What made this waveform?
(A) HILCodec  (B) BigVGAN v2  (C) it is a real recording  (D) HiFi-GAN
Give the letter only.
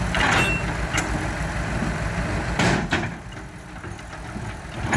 C